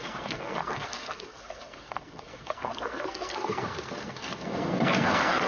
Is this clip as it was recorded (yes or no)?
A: no